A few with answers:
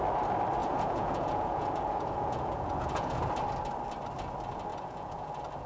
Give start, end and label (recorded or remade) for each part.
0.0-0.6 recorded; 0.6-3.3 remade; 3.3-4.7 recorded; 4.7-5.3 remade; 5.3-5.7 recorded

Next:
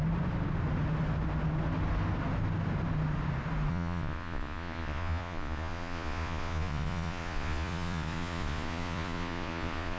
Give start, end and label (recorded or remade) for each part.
0.0-3.7 recorded; 3.7-10.0 remade